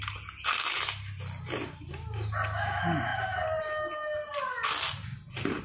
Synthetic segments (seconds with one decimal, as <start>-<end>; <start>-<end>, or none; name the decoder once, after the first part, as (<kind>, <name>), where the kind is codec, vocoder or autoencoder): none